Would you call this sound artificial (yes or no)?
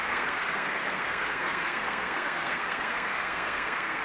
yes